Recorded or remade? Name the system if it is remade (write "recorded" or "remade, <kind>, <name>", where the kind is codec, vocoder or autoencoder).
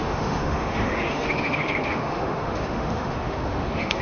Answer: remade, autoencoder, DAC-VAE